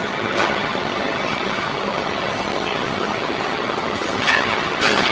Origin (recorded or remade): remade